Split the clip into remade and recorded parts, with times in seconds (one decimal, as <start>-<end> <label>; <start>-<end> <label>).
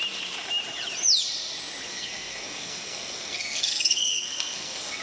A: 0.0-1.9 recorded; 1.9-5.0 remade